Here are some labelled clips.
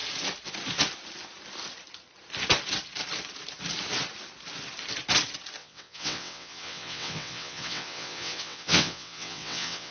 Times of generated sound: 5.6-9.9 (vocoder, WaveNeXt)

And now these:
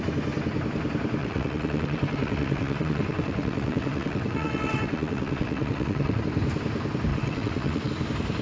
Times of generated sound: 1.2-6.2 (vocoder, WaveNeXt); 7.1-7.9

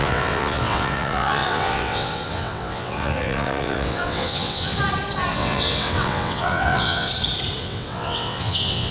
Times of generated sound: 0.0-4.8 (vocoder, WaveNeXt); 5.3-7.1; 7.6-8.9

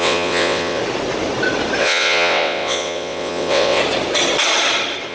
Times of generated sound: 0.0-0.8 (vocoder, WaveNeXt); 1.8-3.8